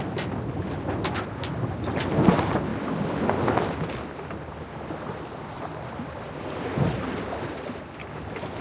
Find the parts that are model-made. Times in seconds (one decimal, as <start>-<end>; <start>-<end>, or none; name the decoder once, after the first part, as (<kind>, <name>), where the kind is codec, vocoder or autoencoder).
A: none